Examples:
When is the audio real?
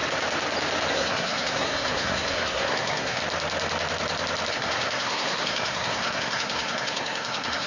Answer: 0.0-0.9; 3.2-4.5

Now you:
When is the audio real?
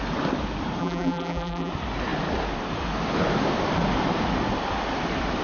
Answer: 0.0-0.8; 1.7-5.4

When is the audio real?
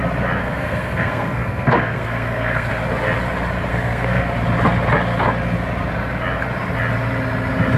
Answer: 0.0-0.4; 2.7-3.7; 4.3-7.8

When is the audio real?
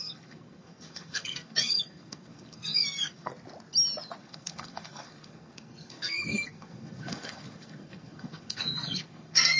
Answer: 3.3-4.2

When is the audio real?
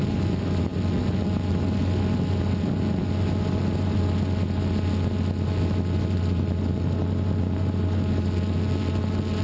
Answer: 0.0-9.4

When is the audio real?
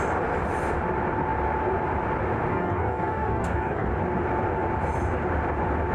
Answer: 0.0-2.5; 3.9-5.9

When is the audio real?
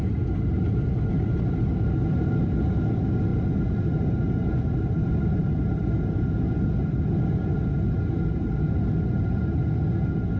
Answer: 0.0-10.4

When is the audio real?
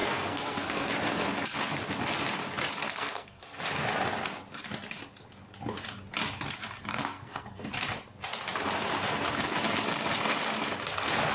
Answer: 0.9-2.8; 3.7-6.9; 7.7-11.3